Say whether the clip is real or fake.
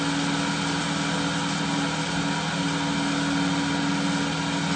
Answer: real